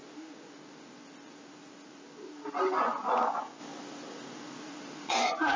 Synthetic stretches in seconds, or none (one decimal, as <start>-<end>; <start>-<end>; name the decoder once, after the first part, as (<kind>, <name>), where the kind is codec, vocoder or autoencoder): 2.6-3.6 (vocoder, Vocos); 5.1-5.6